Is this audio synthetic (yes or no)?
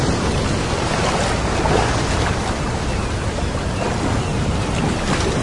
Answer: no